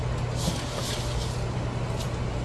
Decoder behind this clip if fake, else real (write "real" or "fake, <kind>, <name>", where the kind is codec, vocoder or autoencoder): real